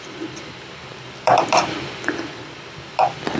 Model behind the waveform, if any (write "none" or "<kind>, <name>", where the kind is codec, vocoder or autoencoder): vocoder, BigVGAN v2